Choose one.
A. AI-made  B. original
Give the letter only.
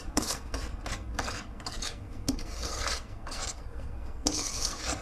A